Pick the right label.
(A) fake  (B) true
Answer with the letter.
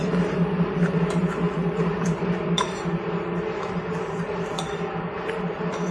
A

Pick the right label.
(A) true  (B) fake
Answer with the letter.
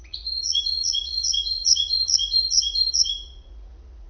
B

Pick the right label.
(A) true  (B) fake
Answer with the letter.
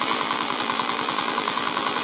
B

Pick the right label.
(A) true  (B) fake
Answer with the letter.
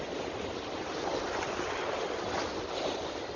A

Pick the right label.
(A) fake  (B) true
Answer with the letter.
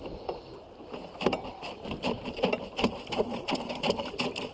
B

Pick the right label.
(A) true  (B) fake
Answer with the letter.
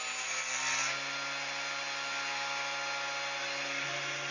A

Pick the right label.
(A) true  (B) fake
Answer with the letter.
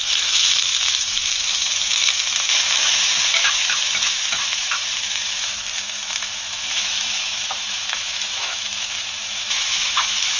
B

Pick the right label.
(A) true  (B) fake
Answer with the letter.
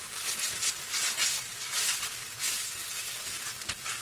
A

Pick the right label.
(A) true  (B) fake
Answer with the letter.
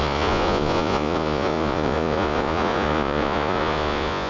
B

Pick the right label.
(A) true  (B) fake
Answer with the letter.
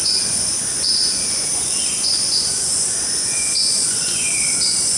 B